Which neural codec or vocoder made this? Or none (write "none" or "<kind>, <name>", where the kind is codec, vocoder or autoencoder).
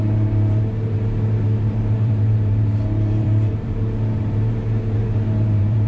vocoder, BigVGAN v2